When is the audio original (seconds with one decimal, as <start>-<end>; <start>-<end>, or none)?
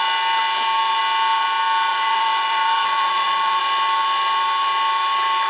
0.0-1.9; 3.6-5.5